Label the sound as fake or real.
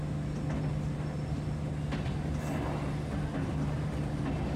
real